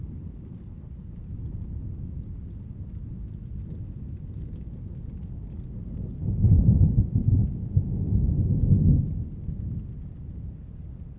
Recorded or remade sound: recorded